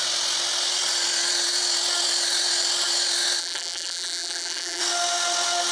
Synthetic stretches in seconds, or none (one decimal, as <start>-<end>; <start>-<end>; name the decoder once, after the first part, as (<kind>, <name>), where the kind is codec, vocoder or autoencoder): 3.4-4.8 (vocoder, BigVGAN v2)